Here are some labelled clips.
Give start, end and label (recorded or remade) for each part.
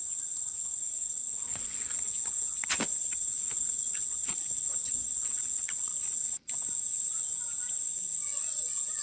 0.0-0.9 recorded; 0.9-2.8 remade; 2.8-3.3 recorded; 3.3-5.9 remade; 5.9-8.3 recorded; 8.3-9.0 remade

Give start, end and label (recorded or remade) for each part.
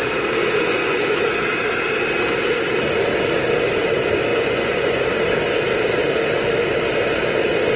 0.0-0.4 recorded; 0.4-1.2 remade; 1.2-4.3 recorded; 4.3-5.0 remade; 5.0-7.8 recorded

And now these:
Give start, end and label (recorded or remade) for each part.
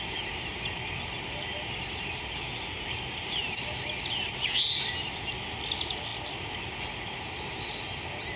0.0-8.4 recorded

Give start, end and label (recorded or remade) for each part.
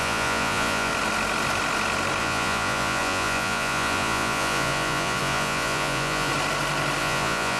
0.0-0.9 remade; 0.9-2.2 recorded; 2.2-6.3 remade; 6.3-7.0 recorded; 7.0-7.6 remade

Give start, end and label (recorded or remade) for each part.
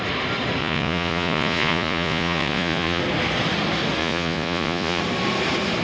0.0-0.6 recorded; 0.6-3.0 remade; 3.0-4.0 recorded; 4.0-5.0 remade; 5.0-5.8 recorded